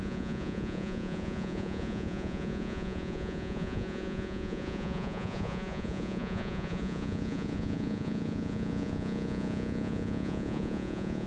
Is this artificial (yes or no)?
yes